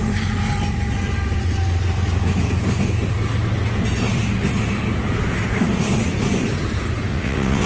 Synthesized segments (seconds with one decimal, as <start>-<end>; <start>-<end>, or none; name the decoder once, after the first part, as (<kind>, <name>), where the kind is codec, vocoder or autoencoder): 7.1-7.7 (vocoder, WaveNeXt)